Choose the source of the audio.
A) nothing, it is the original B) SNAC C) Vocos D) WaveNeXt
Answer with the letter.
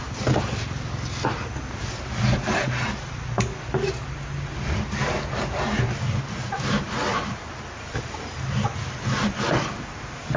A